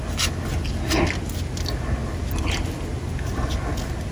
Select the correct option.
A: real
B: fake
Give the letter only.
A